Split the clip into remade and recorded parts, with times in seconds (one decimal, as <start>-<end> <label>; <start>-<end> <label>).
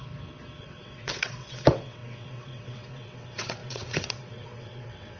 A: 0.0-0.6 recorded; 0.6-5.2 remade